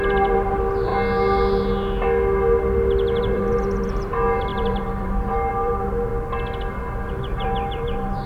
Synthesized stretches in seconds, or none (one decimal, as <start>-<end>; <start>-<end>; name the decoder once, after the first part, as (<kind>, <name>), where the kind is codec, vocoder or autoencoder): 0.0-0.9 (vocoder, BigVGAN v2); 3.2-6.1; 7.1-8.3